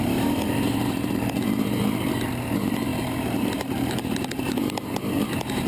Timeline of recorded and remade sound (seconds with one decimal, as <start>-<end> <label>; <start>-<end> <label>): 0.0-5.7 remade